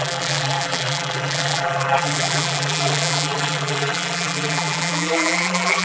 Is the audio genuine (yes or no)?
no